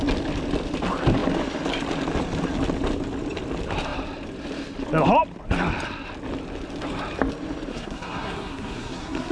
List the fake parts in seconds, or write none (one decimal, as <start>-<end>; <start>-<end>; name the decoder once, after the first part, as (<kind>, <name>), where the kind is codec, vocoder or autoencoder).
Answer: 7.7-9.3 (codec, SNAC)